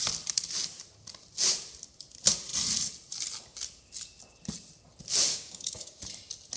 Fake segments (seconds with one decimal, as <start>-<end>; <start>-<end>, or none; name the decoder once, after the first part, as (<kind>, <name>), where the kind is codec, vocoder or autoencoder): 5.3-6.0 (codec, DAC)